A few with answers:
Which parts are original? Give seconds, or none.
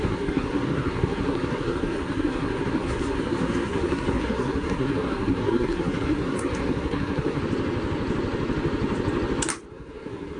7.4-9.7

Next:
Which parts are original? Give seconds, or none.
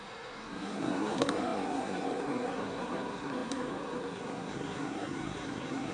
none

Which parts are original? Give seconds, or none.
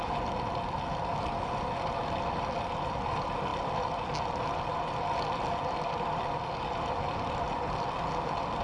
0.0-8.6